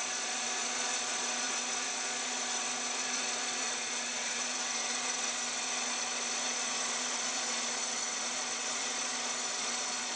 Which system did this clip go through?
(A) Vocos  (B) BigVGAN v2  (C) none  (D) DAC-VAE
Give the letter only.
A